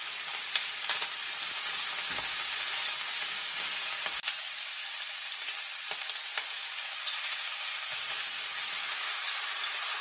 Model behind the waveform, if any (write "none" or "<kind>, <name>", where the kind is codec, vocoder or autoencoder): none